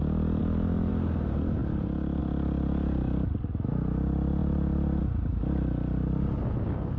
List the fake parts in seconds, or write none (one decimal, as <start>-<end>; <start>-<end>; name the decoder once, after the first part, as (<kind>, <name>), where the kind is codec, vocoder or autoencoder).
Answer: none